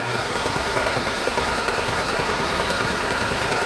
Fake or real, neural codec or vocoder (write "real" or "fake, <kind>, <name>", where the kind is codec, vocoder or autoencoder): fake, codec, SNAC